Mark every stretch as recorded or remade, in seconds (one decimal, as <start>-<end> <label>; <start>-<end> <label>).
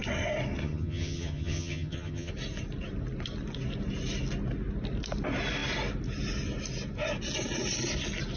0.0-0.6 recorded; 0.6-2.3 remade; 2.3-8.4 recorded